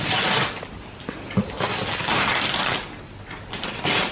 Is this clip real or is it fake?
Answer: real